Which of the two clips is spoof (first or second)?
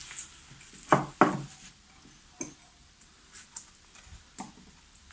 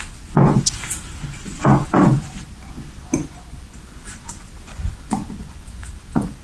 second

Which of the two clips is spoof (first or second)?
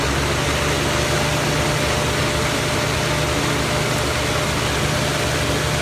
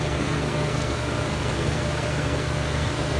second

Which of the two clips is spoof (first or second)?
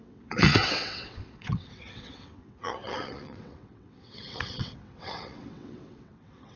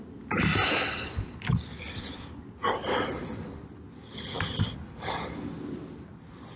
first